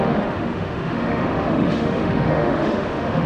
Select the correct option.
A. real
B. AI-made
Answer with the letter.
B